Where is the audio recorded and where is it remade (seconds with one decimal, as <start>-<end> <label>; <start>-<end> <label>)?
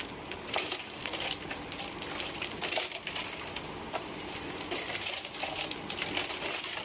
0.0-1.0 recorded; 1.0-5.1 remade; 5.1-6.8 recorded